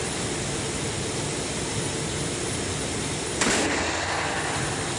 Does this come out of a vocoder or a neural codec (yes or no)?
yes